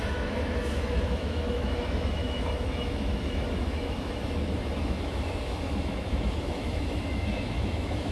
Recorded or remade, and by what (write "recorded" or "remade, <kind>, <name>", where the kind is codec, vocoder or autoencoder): remade, autoencoder, DAC-VAE